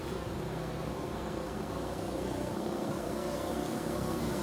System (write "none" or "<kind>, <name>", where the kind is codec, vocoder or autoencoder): codec, SNAC